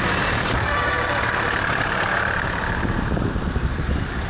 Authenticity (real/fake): fake